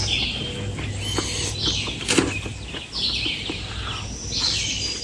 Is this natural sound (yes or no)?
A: yes